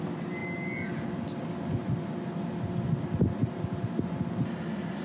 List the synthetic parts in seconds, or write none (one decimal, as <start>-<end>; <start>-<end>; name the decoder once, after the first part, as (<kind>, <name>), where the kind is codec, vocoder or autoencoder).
none